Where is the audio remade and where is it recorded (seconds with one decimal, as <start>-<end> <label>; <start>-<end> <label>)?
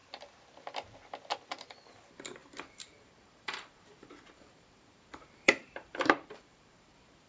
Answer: 0.0-1.9 recorded; 1.9-7.3 remade